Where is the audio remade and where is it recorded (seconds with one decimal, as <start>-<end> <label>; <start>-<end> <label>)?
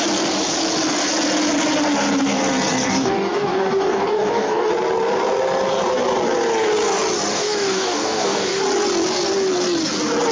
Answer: 0.0-2.9 recorded; 2.9-4.7 remade; 4.7-7.3 recorded; 7.3-8.6 remade; 8.6-10.3 recorded